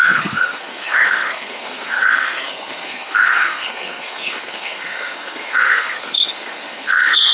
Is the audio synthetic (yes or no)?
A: yes